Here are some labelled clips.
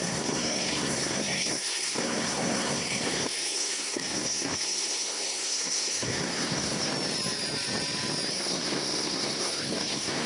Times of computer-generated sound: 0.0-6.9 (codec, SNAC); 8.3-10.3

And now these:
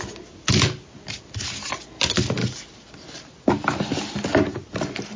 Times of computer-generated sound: 2.4-5.2 (vocoder, BigVGAN v2)